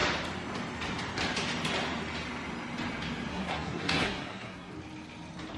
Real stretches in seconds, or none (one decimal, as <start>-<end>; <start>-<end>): 0.0-3.3; 4.7-5.6